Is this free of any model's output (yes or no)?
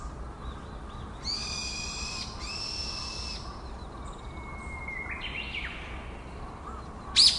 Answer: yes